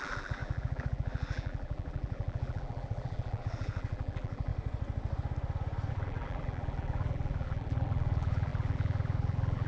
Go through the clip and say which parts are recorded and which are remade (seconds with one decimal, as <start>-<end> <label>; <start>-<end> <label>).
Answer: 0.0-4.5 remade; 4.5-5.9 recorded; 5.9-9.7 remade